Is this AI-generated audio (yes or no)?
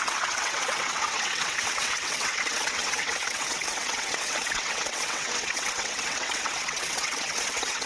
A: yes